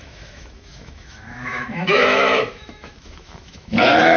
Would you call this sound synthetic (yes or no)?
yes